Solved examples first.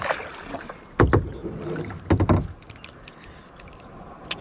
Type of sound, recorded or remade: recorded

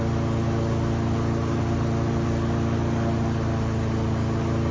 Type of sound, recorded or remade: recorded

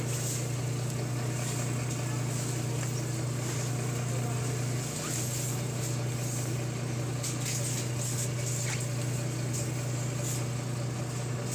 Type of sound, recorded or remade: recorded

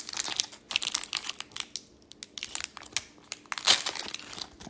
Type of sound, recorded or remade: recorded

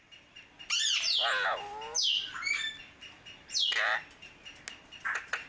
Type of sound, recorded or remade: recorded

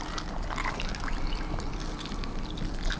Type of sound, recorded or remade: recorded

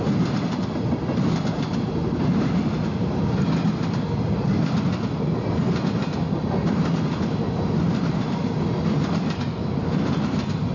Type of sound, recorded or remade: recorded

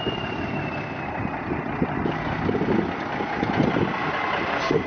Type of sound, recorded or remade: recorded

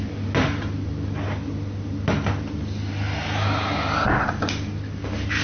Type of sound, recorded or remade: recorded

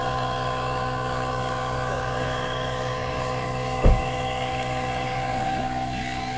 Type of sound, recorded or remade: remade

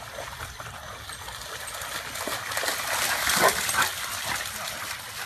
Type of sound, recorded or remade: recorded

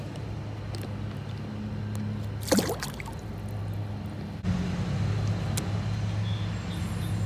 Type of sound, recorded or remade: recorded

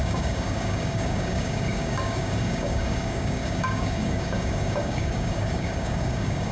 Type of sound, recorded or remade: remade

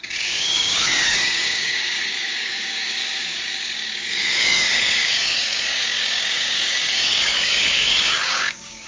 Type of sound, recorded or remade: remade